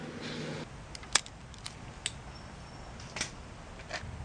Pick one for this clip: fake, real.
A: real